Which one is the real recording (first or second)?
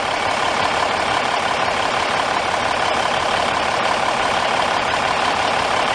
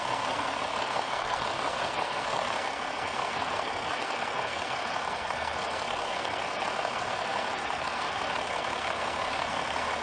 first